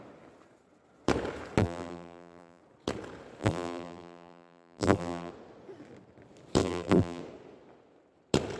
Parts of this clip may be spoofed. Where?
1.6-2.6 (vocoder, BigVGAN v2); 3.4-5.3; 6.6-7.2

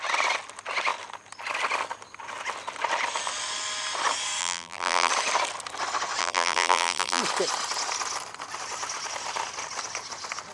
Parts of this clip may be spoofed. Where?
4.4-5.1 (vocoder, BigVGAN v2); 6.2-7.2

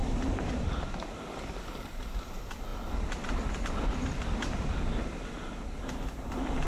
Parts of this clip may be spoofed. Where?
0.0-0.7 (vocoder, BigVGAN v2)